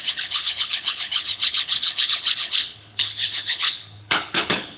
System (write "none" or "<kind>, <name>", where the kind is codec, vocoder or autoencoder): codec, HILCodec